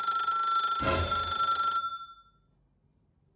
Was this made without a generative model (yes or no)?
yes